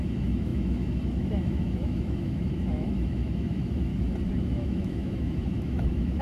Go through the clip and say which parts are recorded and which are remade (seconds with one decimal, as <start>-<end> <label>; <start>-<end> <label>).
0.0-3.9 remade; 3.9-4.4 recorded; 4.4-6.2 remade